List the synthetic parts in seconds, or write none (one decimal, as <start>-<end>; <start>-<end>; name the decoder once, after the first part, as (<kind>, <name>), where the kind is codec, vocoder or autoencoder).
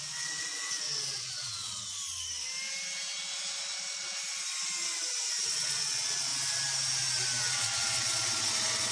0.0-1.9 (vocoder, WaveNeXt); 5.5-6.3; 7.4-8.9